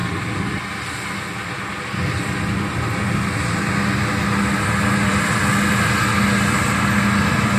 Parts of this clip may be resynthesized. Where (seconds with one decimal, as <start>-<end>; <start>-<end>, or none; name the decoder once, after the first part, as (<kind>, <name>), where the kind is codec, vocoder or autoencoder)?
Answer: none